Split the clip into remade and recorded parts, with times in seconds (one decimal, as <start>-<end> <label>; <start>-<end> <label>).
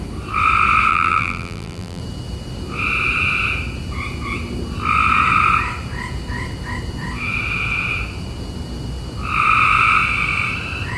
0.0-0.9 recorded; 0.9-2.0 remade; 2.0-11.0 recorded